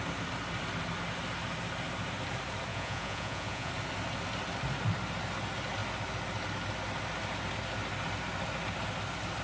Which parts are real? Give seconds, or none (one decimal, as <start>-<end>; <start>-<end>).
0.0-2.7; 3.7-9.4